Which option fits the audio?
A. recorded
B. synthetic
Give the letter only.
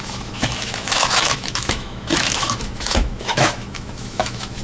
B